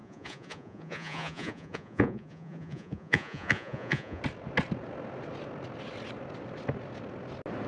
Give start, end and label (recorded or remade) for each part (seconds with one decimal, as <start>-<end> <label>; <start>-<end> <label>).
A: 0.0-4.2 remade; 4.2-7.7 recorded